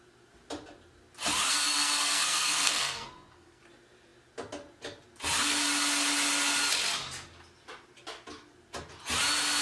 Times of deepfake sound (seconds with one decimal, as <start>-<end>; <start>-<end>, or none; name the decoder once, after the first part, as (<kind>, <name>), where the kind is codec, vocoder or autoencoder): 1.5-3.6 (codec, SNAC)